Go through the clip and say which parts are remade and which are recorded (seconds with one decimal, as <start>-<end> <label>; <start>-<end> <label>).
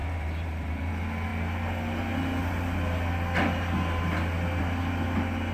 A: 0.0-0.9 remade; 0.9-5.5 recorded